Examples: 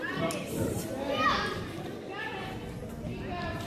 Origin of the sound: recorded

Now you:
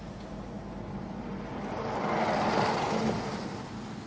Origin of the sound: recorded